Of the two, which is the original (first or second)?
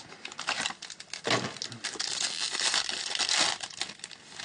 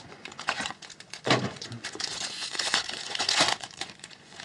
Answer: first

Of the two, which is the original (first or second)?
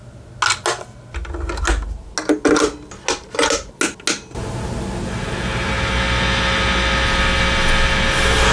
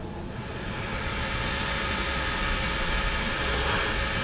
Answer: first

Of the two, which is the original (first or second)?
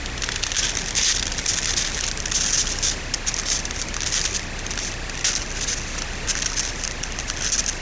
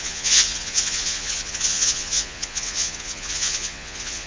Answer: first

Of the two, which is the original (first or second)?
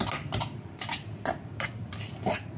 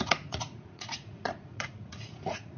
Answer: first